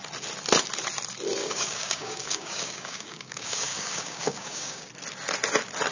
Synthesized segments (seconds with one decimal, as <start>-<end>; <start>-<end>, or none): 1.4-4.9